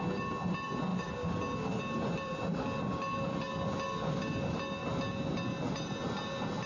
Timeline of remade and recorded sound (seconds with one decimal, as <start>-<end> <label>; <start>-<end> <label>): 0.0-6.7 recorded